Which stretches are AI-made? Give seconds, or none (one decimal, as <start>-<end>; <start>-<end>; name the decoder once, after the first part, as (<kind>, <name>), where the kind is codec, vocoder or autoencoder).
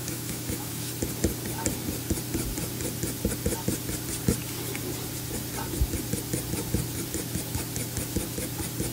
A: 0.0-0.9 (autoencoder, DAC-VAE)